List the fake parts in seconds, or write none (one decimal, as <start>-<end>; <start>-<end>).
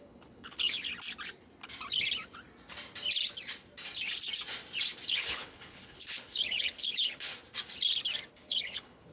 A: 0.0-0.9; 5.1-7.3; 8.3-9.1